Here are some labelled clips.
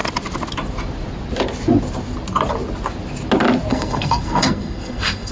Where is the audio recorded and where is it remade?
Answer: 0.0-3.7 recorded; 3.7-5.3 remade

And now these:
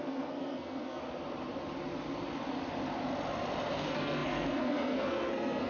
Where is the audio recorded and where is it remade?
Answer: 0.0-1.0 remade; 1.0-3.8 recorded; 3.8-5.7 remade